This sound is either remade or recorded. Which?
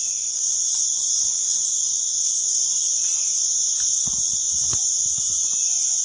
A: recorded